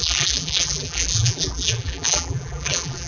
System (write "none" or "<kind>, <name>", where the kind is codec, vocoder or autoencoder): vocoder, BigVGAN v2